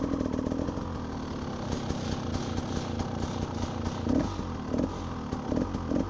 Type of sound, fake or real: real